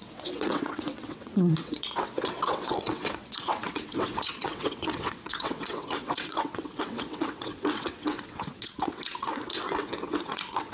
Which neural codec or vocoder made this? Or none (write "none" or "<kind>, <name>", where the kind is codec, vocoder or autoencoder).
vocoder, WaveNeXt